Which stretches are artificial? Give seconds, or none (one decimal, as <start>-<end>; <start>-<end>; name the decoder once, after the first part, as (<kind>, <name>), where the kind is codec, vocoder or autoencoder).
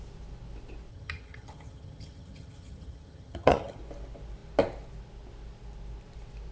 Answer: 0.9-3.8 (vocoder, HiFi-GAN)